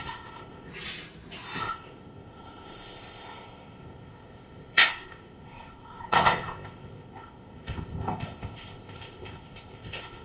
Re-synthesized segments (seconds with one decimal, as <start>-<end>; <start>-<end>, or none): 0.0-0.7; 1.6-10.2